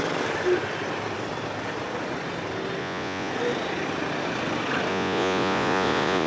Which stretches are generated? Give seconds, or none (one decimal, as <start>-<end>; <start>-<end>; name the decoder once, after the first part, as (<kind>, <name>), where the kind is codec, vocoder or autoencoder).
2.8-3.3 (vocoder, Vocos); 4.9-6.3